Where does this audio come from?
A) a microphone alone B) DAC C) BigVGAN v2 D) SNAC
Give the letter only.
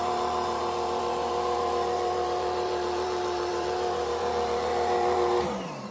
C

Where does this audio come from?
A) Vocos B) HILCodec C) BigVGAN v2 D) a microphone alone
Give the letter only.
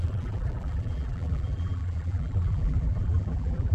C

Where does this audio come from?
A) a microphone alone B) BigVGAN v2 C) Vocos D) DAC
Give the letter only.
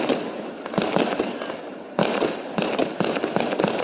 A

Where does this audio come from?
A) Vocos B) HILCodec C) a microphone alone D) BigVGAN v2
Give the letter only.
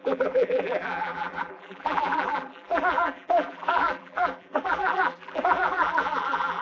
D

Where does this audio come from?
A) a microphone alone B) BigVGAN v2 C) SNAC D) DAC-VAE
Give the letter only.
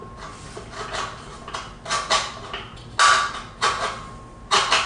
A